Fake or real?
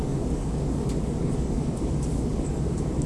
fake